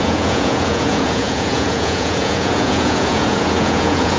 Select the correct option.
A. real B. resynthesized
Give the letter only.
B